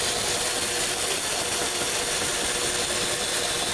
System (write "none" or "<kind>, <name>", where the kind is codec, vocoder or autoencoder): none